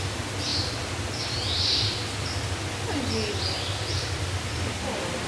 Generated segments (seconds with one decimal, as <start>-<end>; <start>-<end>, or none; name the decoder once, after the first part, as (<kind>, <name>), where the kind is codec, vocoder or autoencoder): none